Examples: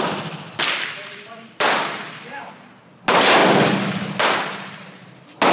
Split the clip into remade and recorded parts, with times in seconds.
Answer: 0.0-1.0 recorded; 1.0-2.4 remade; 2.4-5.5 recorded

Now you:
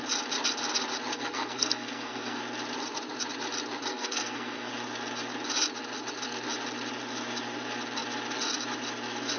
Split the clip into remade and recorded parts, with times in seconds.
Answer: 0.0-1.1 recorded; 1.1-2.4 remade; 2.4-3.9 recorded; 3.9-4.7 remade; 4.7-9.4 recorded

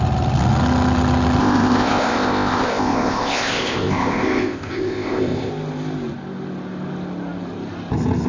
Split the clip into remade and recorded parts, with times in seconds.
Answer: 0.0-1.4 recorded; 1.4-5.5 remade; 5.5-8.3 recorded

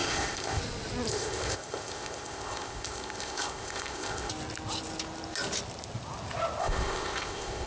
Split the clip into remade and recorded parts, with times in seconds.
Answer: 0.0-0.6 remade; 0.6-1.1 recorded; 1.1-4.3 remade; 4.3-6.6 recorded; 6.6-7.7 remade

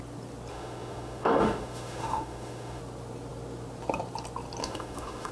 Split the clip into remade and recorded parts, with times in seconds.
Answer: 0.0-0.5 recorded; 0.5-2.8 remade; 2.8-4.6 recorded; 4.6-5.3 remade

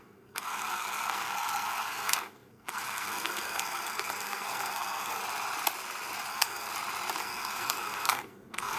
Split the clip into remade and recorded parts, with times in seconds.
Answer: 0.0-5.2 remade; 5.2-6.3 recorded; 6.3-6.7 remade; 6.7-7.2 recorded; 7.2-8.8 remade